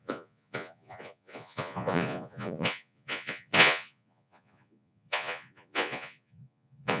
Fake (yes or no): yes